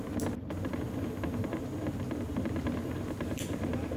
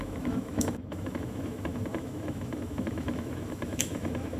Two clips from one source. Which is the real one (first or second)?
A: first